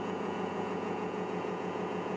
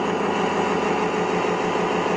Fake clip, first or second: first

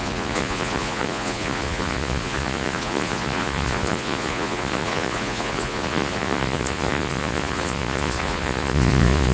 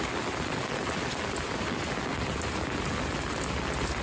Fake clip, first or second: first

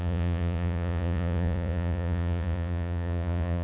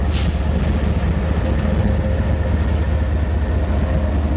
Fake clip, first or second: first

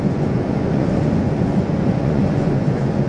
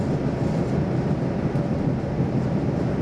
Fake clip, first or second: first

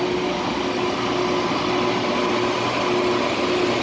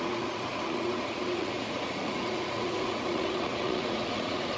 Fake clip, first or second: second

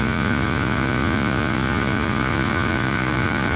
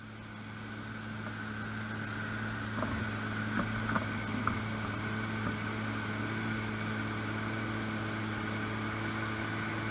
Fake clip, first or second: first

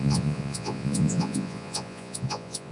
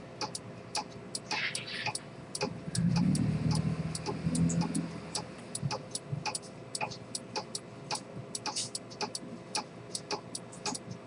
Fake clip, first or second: first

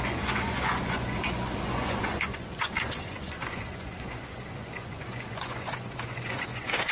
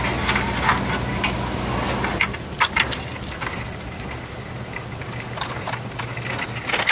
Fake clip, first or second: first